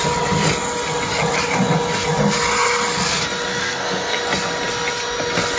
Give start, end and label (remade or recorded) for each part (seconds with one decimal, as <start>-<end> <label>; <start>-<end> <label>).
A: 0.0-3.5 recorded; 3.5-4.2 remade; 4.2-5.6 recorded